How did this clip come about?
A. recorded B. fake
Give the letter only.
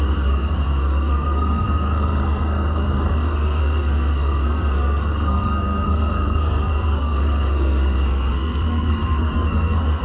B